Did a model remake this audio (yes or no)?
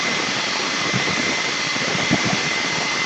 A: yes